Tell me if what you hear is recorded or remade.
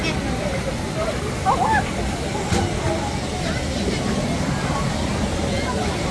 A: recorded